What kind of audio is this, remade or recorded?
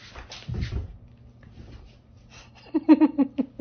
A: recorded